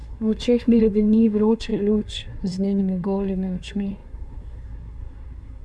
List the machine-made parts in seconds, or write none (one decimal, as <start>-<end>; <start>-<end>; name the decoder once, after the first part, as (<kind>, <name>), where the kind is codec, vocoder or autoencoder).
0.0-5.6 (codec, SNAC)